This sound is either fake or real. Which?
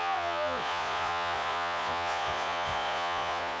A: fake